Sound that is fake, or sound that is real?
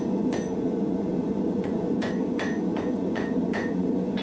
fake